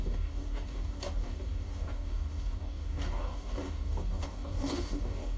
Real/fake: fake